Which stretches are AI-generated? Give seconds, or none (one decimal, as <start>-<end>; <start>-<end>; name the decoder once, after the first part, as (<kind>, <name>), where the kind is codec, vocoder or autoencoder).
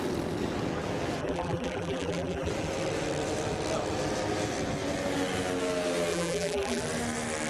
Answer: 1.2-2.5 (vocoder, BigVGAN v2); 6.1-6.8